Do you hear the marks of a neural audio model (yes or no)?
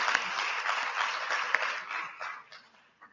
no